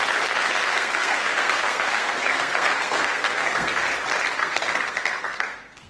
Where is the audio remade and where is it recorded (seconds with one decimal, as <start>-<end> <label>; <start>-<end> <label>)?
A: 0.0-0.6 recorded; 0.6-3.8 remade; 3.8-4.4 recorded; 4.4-5.9 remade